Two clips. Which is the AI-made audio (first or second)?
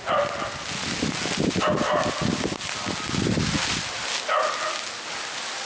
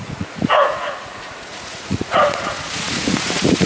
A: second